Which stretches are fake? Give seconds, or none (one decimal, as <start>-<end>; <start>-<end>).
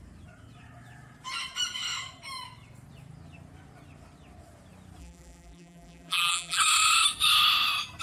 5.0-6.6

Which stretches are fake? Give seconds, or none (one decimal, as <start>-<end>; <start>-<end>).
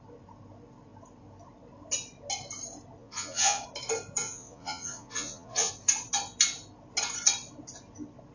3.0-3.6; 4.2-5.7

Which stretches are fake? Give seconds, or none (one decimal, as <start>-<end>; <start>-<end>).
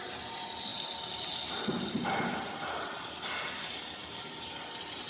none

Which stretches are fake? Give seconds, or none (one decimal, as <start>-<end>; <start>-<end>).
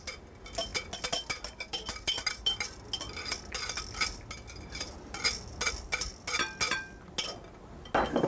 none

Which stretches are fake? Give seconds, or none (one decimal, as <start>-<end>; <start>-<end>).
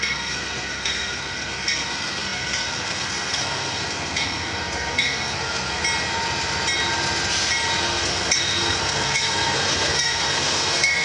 0.0-5.8; 7.8-11.0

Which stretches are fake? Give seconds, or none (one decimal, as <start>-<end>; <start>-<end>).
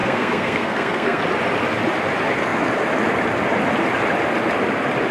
0.0-1.2